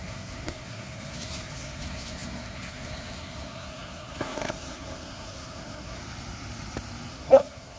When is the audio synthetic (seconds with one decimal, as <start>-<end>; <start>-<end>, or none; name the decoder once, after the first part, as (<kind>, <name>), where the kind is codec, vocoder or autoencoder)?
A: 0.0-6.0 (codec, SNAC); 7.1-7.8